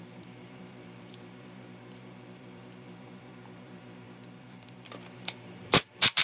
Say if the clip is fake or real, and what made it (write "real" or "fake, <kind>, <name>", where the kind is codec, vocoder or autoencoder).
fake, vocoder, BigVGAN v2